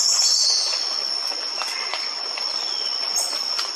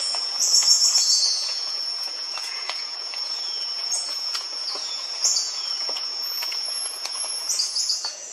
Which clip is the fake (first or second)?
second